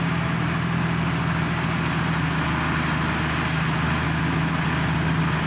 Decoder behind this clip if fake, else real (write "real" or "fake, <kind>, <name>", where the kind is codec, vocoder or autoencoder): real